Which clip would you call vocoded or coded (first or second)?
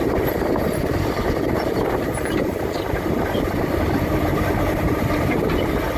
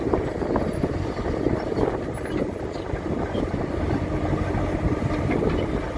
first